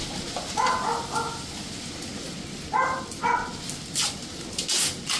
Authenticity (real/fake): real